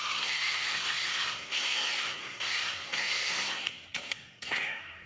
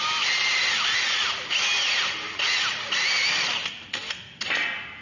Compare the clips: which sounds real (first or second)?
second